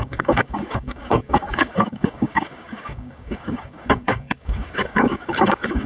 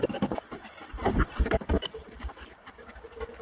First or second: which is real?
second